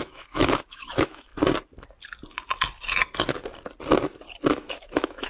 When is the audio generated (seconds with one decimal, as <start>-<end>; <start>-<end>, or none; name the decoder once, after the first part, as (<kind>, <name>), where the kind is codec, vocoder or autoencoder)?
0.0-1.3 (autoencoder, DAC-VAE); 4.5-5.3